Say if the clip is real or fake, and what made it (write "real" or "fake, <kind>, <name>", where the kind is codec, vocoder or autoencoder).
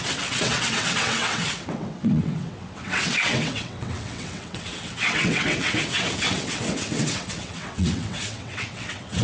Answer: fake, vocoder, WaveNeXt